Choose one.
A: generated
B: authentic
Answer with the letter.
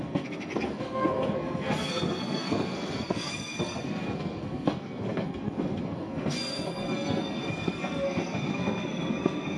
A